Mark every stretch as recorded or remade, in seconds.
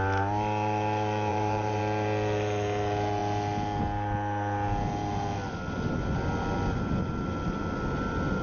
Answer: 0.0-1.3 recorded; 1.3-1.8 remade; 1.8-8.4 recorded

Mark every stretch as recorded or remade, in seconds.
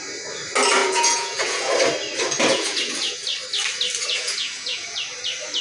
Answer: 0.0-0.8 recorded; 0.8-1.7 remade; 1.7-2.5 recorded; 2.5-3.2 remade; 3.2-4.0 recorded; 4.0-5.0 remade; 5.0-5.6 recorded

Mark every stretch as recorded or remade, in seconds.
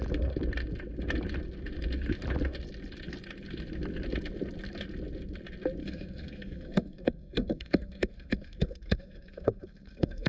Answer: 0.0-5.8 recorded; 5.8-10.3 remade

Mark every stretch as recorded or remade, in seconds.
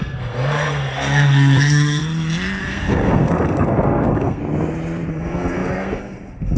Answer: 0.0-2.0 remade; 2.0-2.6 recorded; 2.6-4.4 remade; 4.4-5.1 recorded; 5.1-6.6 remade